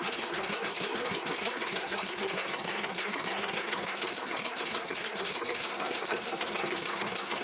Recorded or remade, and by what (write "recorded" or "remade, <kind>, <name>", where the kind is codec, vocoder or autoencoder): remade, codec, SNAC